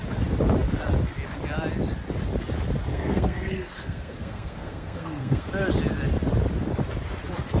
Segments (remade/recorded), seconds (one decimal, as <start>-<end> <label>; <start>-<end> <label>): 0.0-2.9 recorded; 2.9-5.5 remade; 5.5-7.6 recorded